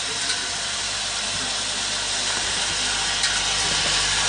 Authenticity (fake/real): real